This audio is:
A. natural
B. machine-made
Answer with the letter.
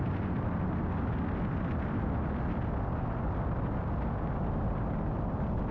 A